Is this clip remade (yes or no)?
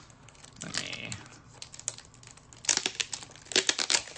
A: no